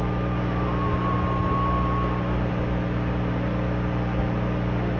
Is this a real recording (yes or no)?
yes